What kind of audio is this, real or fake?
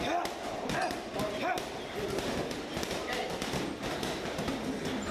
real